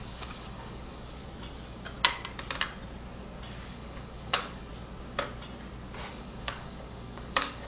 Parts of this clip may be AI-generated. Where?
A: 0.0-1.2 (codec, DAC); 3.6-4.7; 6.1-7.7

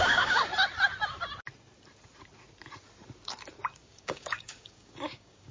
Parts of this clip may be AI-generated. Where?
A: 0.0-0.5 (codec, DAC); 3.8-5.5

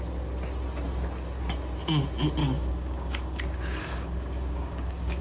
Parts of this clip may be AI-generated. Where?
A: 2.4-3.4 (codec, DAC); 3.8-5.2

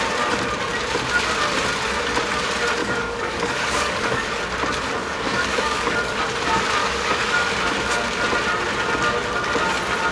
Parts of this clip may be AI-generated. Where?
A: 2.8-4.4 (codec, DAC); 5.0-6.2; 6.8-7.5

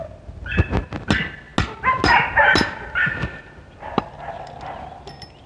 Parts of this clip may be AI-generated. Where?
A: none